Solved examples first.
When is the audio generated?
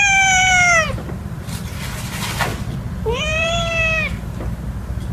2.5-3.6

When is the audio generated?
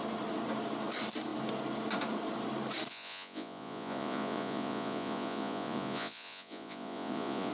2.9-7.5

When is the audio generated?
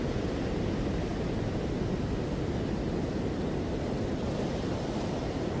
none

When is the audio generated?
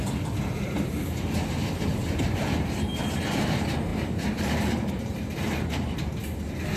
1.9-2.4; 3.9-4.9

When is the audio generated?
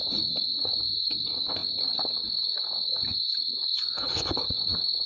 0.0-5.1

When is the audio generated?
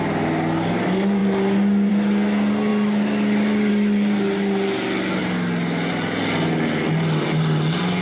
none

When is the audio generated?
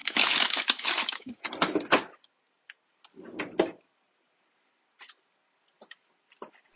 0.0-1.5